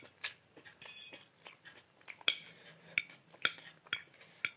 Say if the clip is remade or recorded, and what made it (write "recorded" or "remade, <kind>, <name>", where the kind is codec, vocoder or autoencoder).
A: recorded